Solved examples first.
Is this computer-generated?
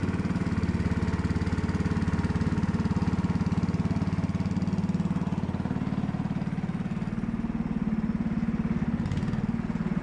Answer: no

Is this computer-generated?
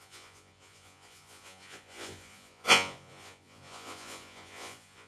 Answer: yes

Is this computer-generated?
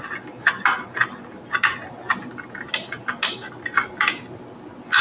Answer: no